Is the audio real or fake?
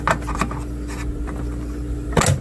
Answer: real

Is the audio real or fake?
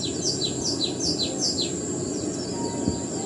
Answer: real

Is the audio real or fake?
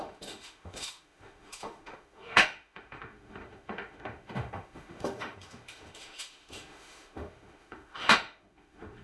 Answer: fake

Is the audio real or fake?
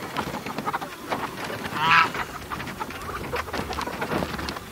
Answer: real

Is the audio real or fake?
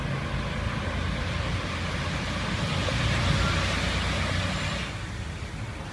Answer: real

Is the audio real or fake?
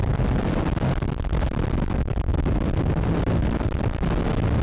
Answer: real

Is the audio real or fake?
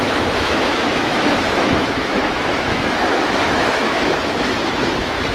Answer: fake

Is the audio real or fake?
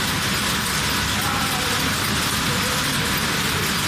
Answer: real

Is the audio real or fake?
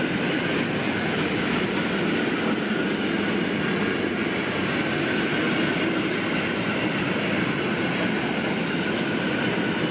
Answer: real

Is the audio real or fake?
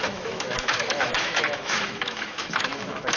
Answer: fake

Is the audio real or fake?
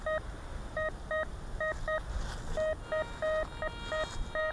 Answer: real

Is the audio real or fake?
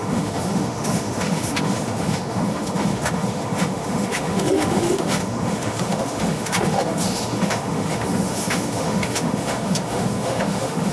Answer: fake